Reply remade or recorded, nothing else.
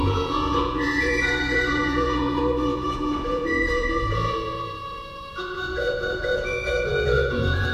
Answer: remade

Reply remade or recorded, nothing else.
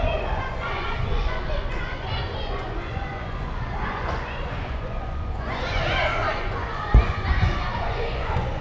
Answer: remade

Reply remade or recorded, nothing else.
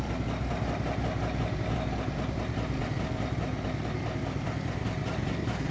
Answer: recorded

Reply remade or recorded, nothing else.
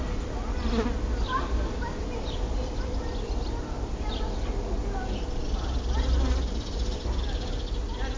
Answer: recorded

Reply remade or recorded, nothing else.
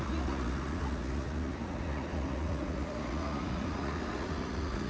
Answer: remade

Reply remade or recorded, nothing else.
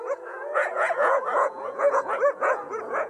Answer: remade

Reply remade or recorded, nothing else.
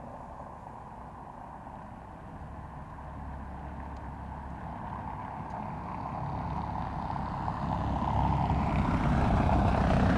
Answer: recorded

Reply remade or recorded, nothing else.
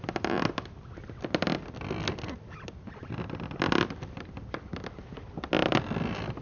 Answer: recorded